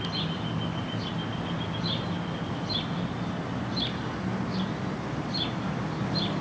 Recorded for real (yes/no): yes